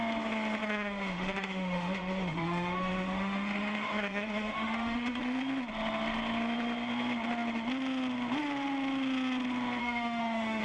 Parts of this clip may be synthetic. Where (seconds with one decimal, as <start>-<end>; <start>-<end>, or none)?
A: 0.6-5.2; 9.8-10.6